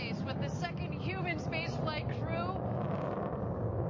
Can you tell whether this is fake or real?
real